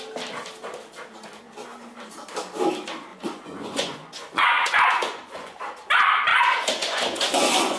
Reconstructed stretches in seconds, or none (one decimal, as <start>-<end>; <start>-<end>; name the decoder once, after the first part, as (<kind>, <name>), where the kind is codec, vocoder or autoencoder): 3.1-5.6 (vocoder, Vocos); 6.3-7.8